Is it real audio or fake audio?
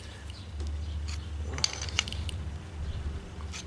real